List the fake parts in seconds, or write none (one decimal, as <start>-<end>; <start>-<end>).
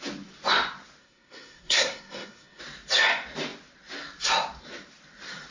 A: 1.0-2.6